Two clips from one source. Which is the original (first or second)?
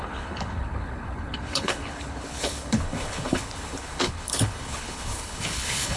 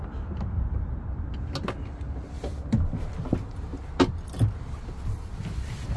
second